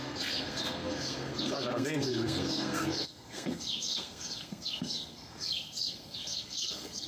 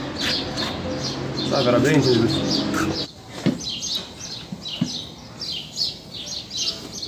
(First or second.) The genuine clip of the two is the second